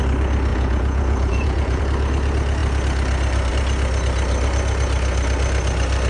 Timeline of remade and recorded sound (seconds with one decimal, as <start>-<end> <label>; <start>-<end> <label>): 0.0-0.5 recorded; 0.5-1.8 remade; 1.8-6.1 recorded